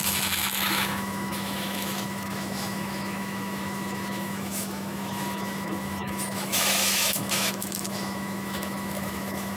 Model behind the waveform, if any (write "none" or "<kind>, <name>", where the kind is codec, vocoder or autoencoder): autoencoder, DAC-VAE